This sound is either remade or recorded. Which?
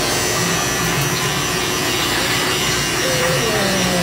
remade